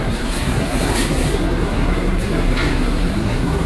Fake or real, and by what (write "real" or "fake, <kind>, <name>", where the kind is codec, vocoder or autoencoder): fake, codec, SNAC